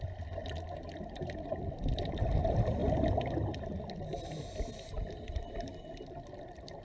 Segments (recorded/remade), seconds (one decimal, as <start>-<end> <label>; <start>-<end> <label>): 0.0-0.4 recorded; 0.4-1.7 remade; 1.7-6.8 recorded